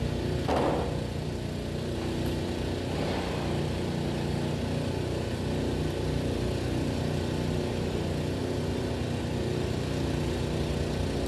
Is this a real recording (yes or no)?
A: yes